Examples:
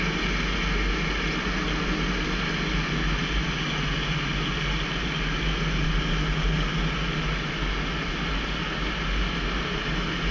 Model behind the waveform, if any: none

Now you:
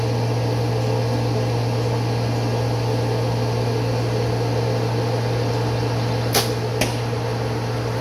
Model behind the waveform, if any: none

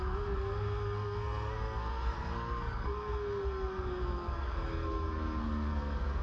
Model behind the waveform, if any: codec, SNAC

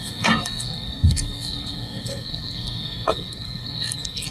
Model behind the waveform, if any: codec, SNAC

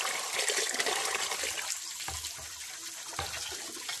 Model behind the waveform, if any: none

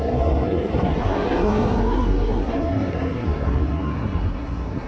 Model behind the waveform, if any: codec, SNAC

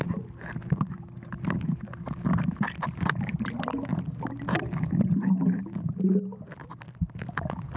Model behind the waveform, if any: none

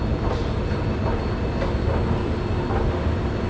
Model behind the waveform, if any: none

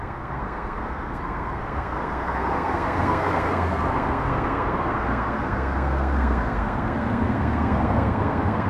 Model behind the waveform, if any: codec, SNAC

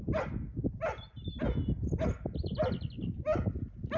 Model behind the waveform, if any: none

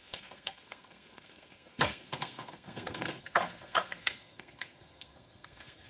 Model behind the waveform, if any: codec, SNAC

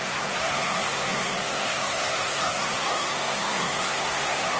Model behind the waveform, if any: codec, SNAC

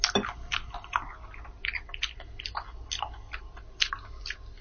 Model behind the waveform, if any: none